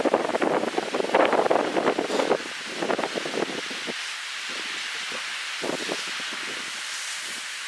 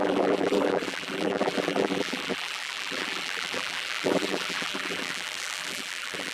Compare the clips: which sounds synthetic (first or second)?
second